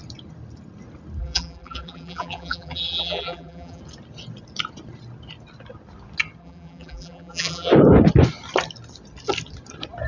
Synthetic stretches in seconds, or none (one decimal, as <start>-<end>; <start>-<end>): 1.2-3.8; 6.4-7.7